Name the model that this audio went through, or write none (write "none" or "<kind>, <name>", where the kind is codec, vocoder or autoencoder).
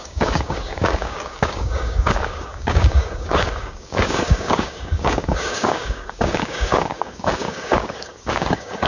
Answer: codec, DAC